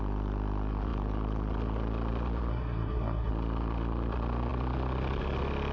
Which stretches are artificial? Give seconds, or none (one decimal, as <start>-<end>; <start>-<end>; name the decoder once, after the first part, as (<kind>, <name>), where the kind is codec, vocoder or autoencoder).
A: 2.5-3.3 (codec, SNAC)